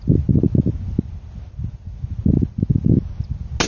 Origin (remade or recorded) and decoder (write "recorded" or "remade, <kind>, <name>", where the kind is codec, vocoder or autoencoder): recorded